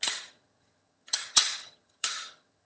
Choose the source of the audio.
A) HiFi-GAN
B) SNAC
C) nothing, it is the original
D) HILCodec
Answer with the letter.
A